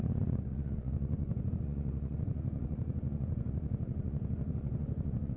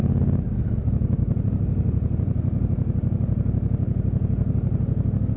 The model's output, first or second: first